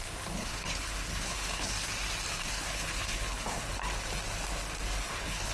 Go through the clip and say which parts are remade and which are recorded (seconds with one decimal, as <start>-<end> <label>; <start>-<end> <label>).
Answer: 0.0-1.7 remade; 1.7-2.5 recorded; 2.5-3.8 remade; 3.8-5.0 recorded; 5.0-5.5 remade